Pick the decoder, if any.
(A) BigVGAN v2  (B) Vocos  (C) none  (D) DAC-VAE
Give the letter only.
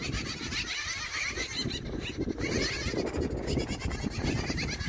C